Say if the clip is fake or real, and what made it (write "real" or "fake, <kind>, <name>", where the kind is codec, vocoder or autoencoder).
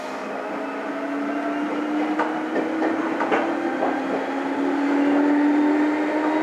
real